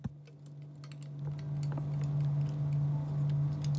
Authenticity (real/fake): real